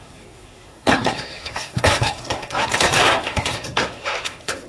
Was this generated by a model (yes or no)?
yes